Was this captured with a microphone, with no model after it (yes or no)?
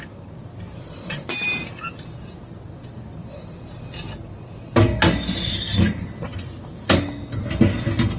yes